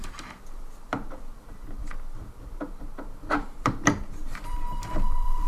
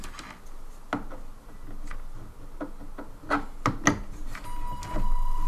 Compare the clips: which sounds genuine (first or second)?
second